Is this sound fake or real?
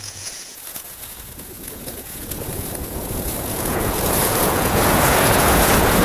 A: fake